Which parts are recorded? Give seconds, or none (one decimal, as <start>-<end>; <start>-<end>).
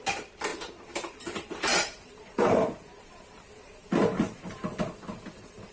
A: 3.8-5.3